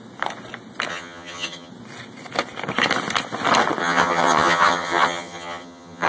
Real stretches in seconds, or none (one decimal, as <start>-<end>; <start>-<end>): 0.0-0.9; 1.7-3.8